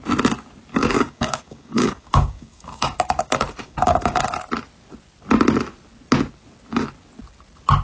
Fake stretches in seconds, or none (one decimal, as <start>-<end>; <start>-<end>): 0.7-4.2